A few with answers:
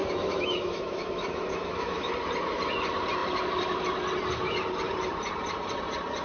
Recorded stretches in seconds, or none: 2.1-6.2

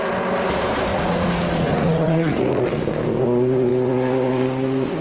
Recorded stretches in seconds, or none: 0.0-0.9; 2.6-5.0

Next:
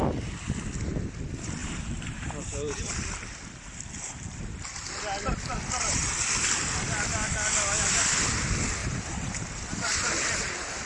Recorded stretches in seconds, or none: 0.0-1.6; 2.9-8.8; 9.9-10.9

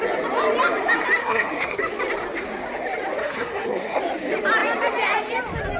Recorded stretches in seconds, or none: 0.0-1.2; 1.8-3.2; 4.0-5.8

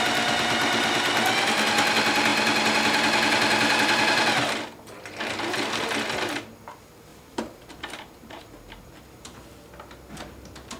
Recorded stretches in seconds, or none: 0.0-7.1; 8.4-10.8